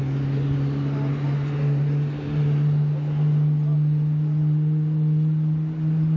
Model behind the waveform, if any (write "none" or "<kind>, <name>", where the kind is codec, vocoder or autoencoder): none